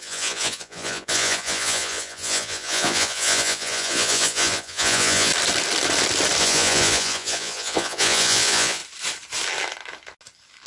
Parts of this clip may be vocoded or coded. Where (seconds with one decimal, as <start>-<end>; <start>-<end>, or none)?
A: 0.0-5.3; 6.4-8.8